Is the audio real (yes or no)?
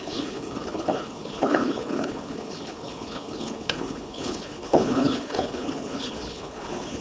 no